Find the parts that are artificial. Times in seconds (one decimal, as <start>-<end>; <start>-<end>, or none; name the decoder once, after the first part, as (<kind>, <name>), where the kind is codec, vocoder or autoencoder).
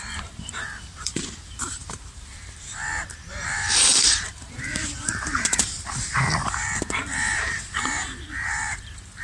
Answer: 0.0-9.2 (vocoder, BigVGAN v2)